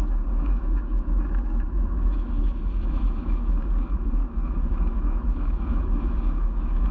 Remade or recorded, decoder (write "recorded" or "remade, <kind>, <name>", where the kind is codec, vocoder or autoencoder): remade, autoencoder, DAC-VAE